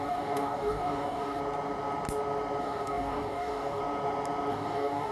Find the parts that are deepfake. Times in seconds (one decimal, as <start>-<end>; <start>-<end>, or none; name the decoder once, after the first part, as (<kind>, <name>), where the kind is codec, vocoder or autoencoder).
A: 0.0-1.4 (codec, DAC); 2.6-3.8; 4.5-5.1